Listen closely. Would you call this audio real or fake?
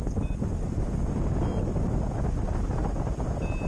real